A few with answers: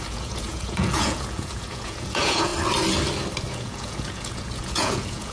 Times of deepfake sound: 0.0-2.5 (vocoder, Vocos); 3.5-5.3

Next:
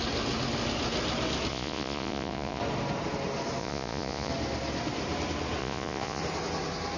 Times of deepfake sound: 1.5-2.6 (vocoder, Vocos); 3.6-4.3; 5.6-6.2

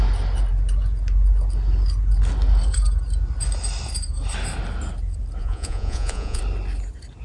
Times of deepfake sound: 5.4-6.4 (vocoder, Vocos)

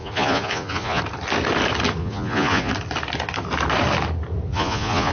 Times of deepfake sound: 0.0-1.0 (vocoder, Vocos); 2.0-2.7; 4.5-5.1